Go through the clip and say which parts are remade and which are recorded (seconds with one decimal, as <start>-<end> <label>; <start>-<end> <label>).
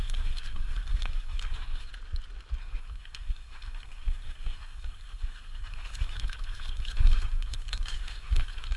0.0-1.9 remade; 1.9-2.6 recorded; 2.6-8.8 remade